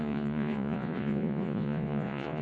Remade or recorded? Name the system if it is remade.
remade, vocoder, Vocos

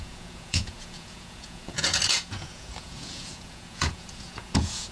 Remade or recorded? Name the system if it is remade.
remade, vocoder, Vocos